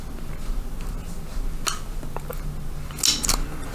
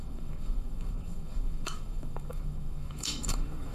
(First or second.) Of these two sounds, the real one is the first